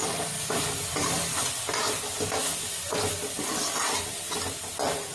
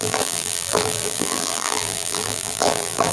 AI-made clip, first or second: second